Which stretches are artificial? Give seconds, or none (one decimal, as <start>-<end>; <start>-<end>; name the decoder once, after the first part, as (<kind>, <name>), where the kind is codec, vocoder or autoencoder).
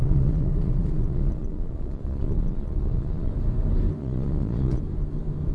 0.0-3.3 (vocoder, Vocos); 4.0-4.8